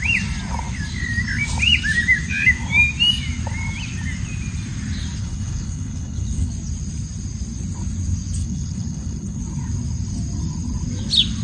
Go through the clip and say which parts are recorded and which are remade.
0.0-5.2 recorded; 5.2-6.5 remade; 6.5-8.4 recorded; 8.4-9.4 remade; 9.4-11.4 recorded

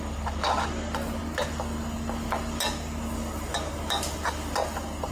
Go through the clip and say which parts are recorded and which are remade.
0.0-5.1 recorded

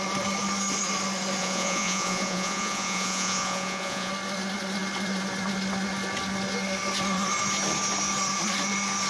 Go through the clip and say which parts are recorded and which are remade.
0.0-1.4 recorded; 1.4-4.1 remade; 4.1-9.1 recorded